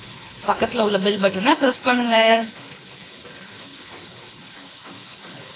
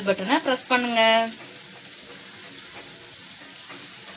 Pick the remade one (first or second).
first